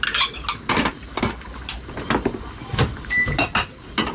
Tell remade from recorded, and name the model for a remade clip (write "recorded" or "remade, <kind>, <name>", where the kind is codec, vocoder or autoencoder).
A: recorded